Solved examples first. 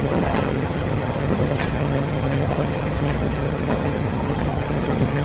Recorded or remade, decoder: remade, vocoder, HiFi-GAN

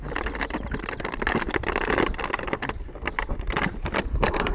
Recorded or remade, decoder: recorded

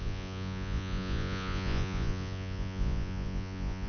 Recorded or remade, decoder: remade, vocoder, Vocos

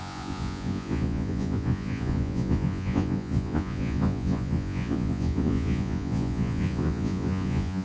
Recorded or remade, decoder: remade, vocoder, Vocos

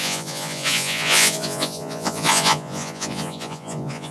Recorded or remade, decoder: remade, vocoder, Vocos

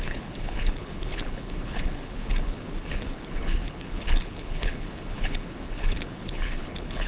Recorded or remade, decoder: remade, codec, HILCodec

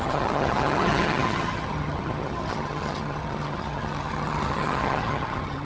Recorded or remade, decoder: remade, vocoder, HiFi-GAN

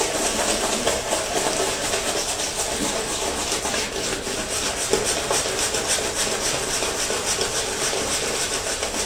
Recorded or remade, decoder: recorded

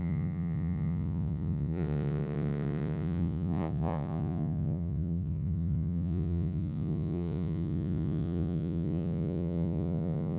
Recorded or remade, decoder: remade, vocoder, Vocos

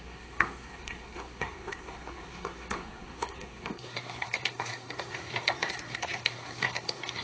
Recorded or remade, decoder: remade, codec, SNAC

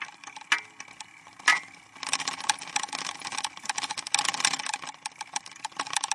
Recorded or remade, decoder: recorded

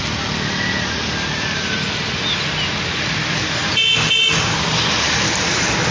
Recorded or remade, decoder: recorded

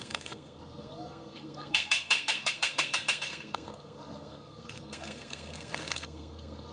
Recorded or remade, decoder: remade, codec, SNAC